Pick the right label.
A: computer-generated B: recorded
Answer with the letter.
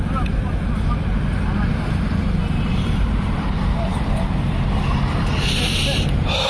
B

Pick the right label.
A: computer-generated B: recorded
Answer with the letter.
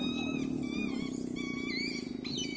B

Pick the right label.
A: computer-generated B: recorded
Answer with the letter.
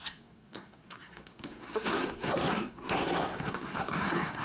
A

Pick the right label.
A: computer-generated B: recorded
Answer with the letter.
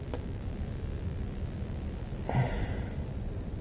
B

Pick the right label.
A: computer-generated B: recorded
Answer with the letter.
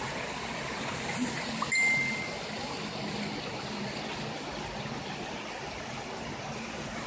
B